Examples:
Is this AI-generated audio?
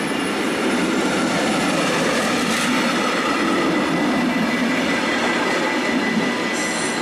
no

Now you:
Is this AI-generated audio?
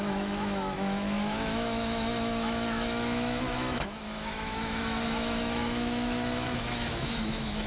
yes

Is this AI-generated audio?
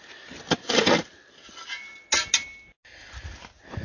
no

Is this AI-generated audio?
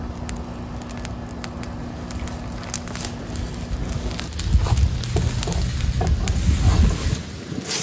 no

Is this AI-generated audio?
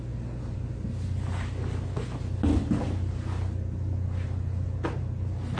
no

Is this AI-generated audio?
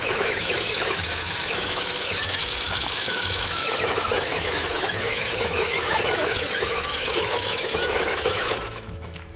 yes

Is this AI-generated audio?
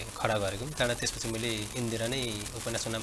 no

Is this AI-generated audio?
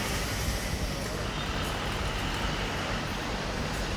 no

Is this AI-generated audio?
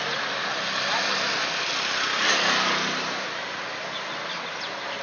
no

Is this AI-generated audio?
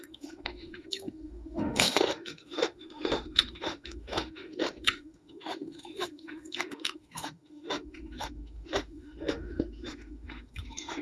yes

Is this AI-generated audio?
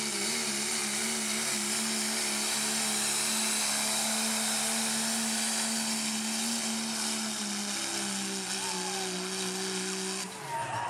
no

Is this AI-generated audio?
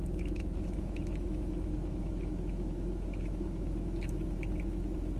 yes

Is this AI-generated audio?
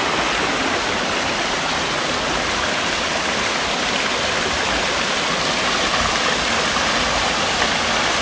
no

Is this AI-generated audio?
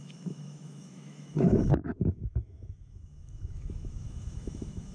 yes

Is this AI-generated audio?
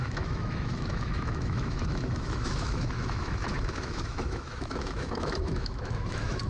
yes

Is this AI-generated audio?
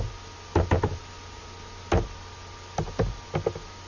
no